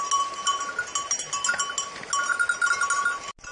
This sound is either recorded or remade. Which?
recorded